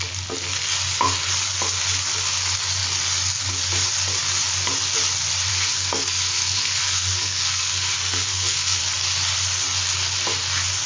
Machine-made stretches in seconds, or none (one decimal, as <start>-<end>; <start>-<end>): 5.5-8.8